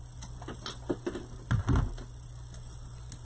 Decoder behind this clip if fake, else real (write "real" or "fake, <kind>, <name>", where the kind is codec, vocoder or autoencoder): real